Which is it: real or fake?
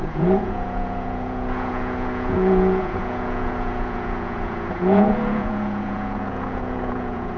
fake